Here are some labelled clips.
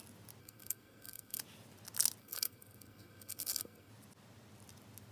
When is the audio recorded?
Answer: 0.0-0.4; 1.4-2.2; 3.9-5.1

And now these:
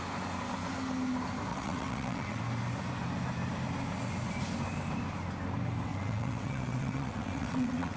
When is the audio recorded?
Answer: 0.0-1.5; 2.4-5.9

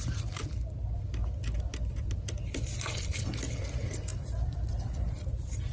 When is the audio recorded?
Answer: 0.0-4.1; 5.1-5.7

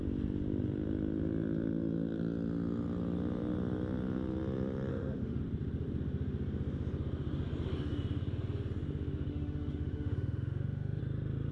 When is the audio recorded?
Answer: 0.0-4.9; 5.4-9.3; 11.0-11.5

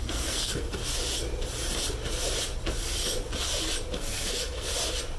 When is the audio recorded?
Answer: 0.8-3.9; 4.7-5.2

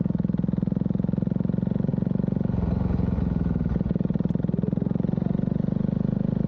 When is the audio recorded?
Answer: 0.0-6.5

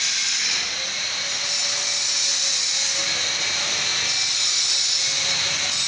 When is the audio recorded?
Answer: 0.0-5.9

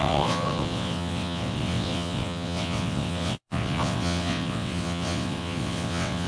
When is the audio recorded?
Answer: none